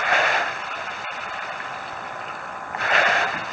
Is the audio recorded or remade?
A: recorded